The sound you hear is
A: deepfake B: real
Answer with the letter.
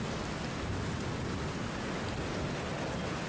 B